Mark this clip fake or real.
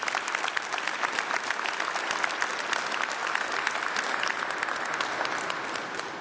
real